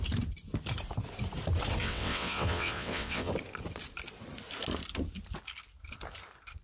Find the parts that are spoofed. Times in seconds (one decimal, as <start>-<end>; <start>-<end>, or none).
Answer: 1.8-3.3